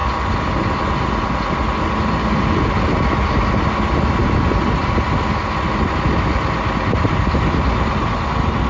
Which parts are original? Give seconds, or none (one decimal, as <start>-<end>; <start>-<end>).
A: 0.0-8.7